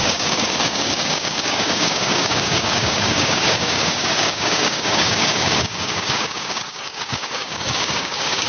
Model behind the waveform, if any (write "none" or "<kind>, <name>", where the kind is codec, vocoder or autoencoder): codec, DAC